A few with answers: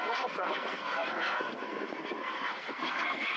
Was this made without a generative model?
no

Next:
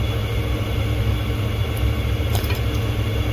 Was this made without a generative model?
yes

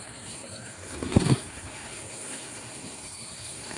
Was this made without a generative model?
no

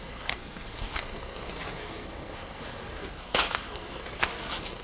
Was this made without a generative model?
no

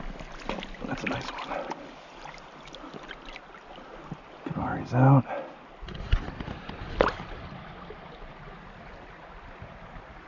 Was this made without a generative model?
yes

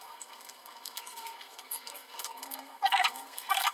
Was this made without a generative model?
no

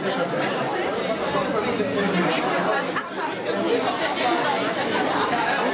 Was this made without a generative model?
yes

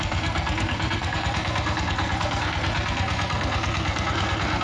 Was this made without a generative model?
no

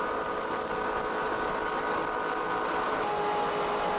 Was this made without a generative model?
yes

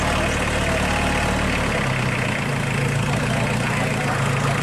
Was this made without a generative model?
yes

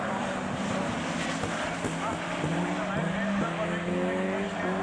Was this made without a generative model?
yes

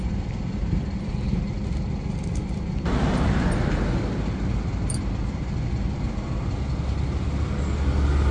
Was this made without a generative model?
yes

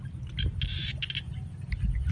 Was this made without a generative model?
yes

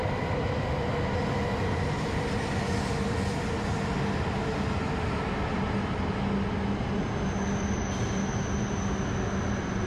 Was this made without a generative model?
yes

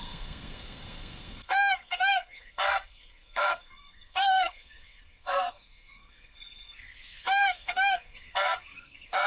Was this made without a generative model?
no